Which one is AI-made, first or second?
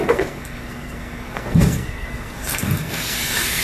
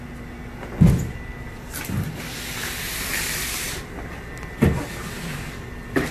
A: first